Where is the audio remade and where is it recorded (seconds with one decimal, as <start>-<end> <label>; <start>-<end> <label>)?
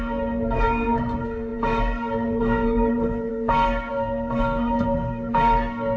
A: 0.0-6.0 remade